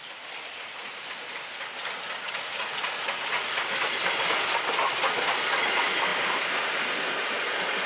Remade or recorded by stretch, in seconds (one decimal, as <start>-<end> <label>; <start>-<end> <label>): 0.0-7.9 recorded